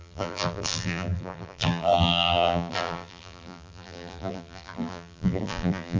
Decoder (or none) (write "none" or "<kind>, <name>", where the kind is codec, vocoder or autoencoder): vocoder, BigVGAN v2